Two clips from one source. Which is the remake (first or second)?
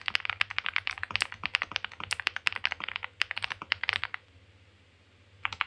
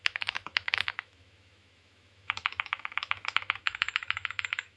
second